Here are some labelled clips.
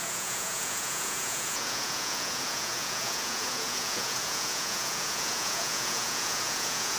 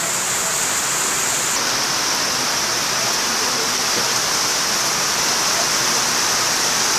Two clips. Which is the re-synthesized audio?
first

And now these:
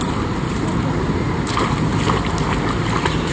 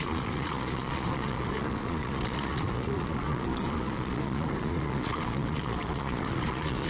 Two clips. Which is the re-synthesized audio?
second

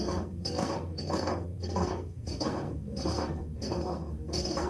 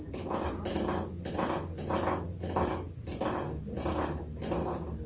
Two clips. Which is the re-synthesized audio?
first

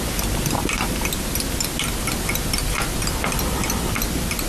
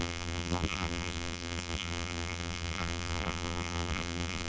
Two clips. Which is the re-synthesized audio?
second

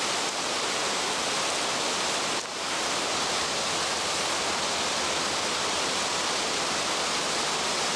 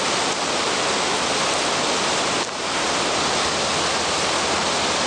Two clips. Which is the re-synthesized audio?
first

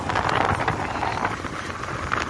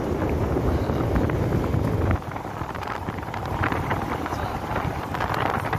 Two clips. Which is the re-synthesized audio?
second